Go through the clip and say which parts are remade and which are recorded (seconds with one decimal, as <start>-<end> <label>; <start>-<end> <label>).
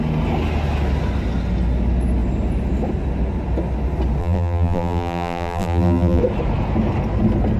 0.0-4.2 recorded; 4.2-6.2 remade; 6.2-7.6 recorded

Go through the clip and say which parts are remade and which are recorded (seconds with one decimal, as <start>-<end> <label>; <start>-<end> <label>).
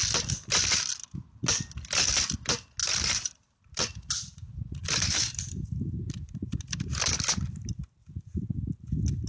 0.0-2.8 recorded; 2.8-7.1 remade; 7.1-9.3 recorded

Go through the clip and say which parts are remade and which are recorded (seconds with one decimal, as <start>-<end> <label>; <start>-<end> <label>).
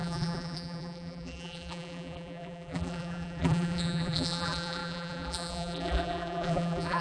0.0-7.0 remade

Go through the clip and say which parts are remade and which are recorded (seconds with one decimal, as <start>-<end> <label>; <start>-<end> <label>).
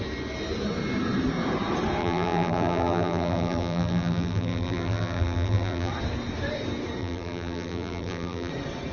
0.0-2.0 recorded; 2.0-5.9 remade; 5.9-7.0 recorded; 7.0-8.5 remade; 8.5-8.9 recorded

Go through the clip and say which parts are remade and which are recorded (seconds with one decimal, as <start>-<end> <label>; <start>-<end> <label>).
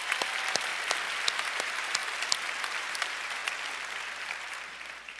0.0-0.7 remade; 0.7-1.5 recorded; 1.5-2.0 remade; 2.0-2.8 recorded; 2.8-3.4 remade; 3.4-4.2 recorded; 4.2-5.2 remade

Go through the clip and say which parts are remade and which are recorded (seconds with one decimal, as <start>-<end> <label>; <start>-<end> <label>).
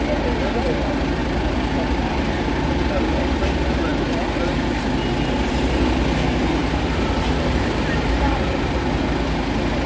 0.0-1.2 recorded; 1.2-2.8 remade; 2.8-6.6 recorded; 6.6-9.0 remade; 9.0-9.9 recorded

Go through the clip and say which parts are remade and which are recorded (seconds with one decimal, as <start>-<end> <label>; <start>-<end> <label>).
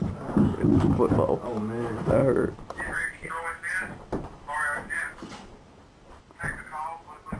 0.0-2.2 recorded; 2.2-6.2 remade; 6.2-7.4 recorded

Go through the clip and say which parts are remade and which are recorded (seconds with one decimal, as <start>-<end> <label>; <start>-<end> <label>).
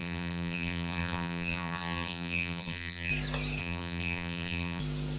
0.0-3.1 remade; 3.1-3.6 recorded; 3.6-4.8 remade; 4.8-5.2 recorded